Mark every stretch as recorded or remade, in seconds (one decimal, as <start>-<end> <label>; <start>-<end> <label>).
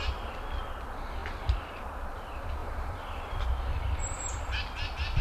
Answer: 0.0-2.6 recorded; 2.6-3.4 remade; 3.4-5.2 recorded